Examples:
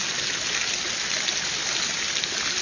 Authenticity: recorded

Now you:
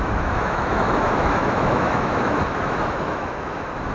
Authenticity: remade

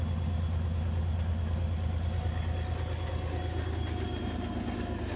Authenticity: recorded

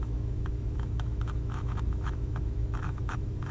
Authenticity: remade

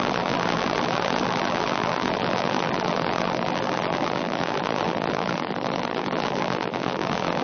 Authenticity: remade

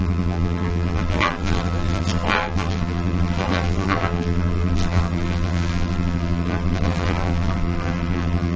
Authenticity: remade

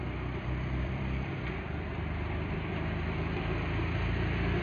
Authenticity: remade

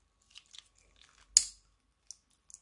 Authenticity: recorded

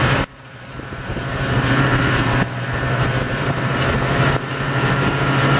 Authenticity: remade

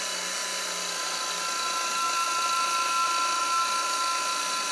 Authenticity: recorded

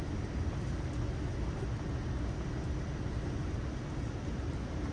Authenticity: recorded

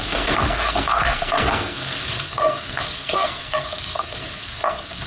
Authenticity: remade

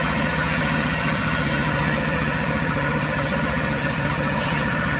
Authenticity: remade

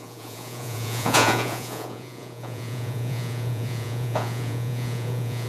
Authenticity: remade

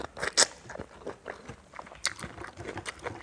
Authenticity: recorded